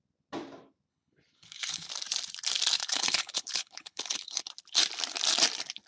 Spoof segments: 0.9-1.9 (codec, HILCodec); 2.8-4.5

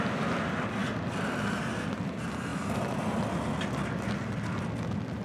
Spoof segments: none

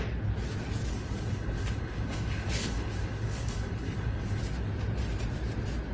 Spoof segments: 0.9-4.4 (codec, HILCodec)

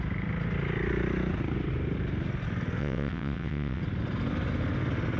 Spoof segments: 2.8-3.8 (vocoder, WaveNeXt)

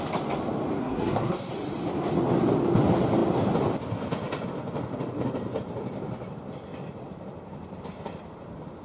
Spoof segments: 0.8-1.5 (codec, SNAC)

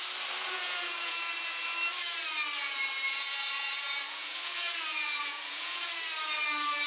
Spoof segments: 0.4-1.7 (vocoder, Vocos); 2.6-5.9

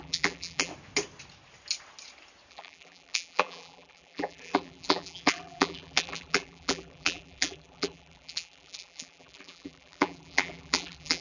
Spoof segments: 0.0-0.7 (vocoder, BigVGAN v2); 2.5-11.2